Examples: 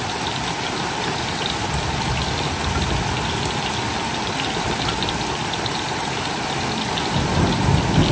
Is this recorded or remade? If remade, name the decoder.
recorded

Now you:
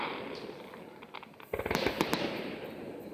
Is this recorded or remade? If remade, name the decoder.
recorded